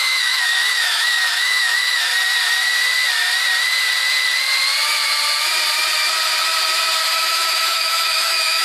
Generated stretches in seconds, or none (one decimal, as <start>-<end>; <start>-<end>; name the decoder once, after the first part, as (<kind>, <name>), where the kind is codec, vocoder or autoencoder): 0.0-2.1 (autoencoder, DAC-VAE); 7.0-8.6